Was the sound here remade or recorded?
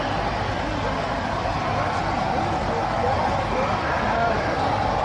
recorded